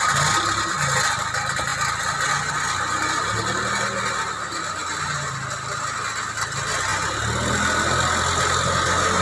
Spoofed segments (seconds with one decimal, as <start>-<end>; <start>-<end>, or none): none